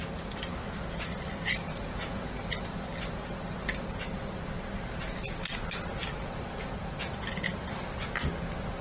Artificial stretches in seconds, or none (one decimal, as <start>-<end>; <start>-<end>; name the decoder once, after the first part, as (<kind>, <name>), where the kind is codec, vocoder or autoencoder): 1.8-2.4 (vocoder, Vocos)